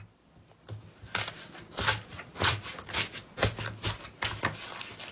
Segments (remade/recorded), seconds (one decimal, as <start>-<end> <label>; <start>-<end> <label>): 0.0-2.1 recorded; 2.1-2.7 remade; 2.7-5.1 recorded